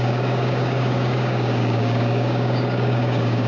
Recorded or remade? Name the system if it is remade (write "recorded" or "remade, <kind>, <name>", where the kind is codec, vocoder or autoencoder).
remade, codec, DAC